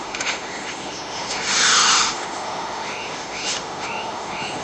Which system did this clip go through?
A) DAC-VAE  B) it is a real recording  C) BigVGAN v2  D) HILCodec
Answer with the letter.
A